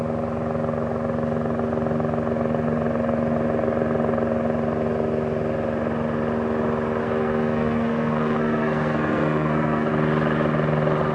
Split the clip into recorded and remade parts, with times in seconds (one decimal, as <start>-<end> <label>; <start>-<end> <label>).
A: 0.0-7.0 recorded; 7.0-9.9 remade; 9.9-11.1 recorded